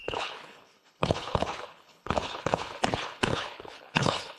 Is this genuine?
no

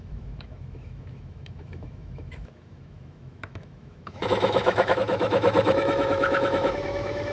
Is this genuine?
no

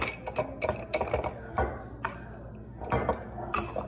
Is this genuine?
yes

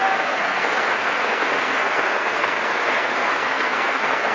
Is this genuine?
no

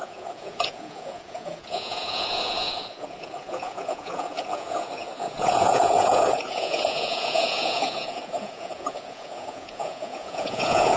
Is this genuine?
no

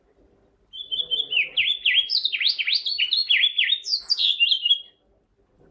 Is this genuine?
yes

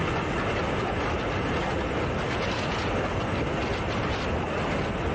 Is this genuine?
yes